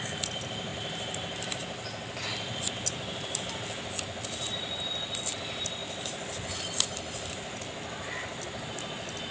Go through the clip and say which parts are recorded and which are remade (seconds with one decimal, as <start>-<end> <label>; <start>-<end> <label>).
0.0-0.7 recorded; 0.7-2.6 remade; 2.6-5.8 recorded; 5.8-8.7 remade; 8.7-9.3 recorded

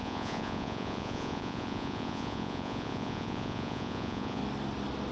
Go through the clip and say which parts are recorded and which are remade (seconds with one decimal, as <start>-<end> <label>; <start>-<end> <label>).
0.0-4.4 remade; 4.4-5.1 recorded

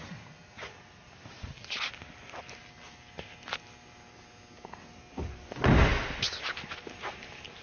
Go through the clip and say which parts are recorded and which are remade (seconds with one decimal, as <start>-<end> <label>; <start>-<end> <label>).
0.0-7.6 recorded

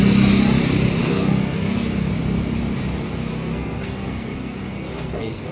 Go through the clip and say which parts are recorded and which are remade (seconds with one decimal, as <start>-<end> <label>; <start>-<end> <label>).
0.0-1.0 recorded; 1.0-2.1 remade; 2.1-3.3 recorded; 3.3-5.5 remade

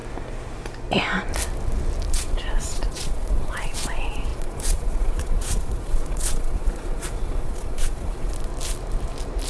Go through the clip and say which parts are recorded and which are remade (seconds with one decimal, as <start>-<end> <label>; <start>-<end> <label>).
0.0-2.1 recorded; 2.1-8.5 remade; 8.5-9.5 recorded